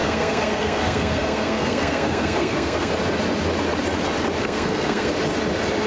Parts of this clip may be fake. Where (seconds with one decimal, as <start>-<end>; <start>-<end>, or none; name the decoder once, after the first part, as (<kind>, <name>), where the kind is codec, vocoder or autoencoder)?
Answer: 0.0-2.9 (codec, SNAC); 4.4-5.1